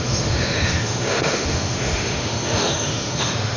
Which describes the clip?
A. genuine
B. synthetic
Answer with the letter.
B